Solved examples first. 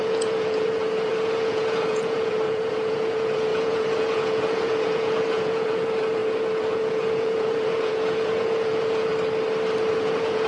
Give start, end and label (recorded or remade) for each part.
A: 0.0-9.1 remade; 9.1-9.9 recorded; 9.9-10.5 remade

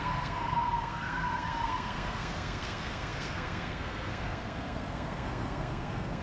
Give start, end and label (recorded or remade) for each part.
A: 0.0-6.2 remade